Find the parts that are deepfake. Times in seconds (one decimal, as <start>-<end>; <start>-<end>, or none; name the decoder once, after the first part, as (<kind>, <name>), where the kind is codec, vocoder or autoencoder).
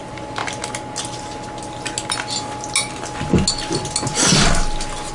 none